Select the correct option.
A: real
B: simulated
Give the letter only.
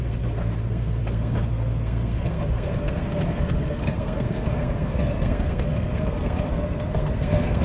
B